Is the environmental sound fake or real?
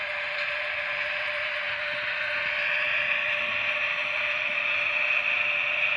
real